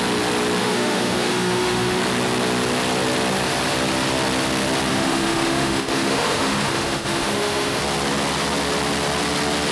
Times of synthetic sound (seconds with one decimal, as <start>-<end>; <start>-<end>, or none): 0.6-2.0; 4.9-7.8